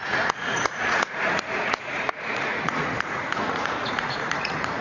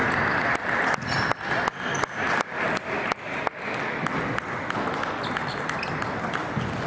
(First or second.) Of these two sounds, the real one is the second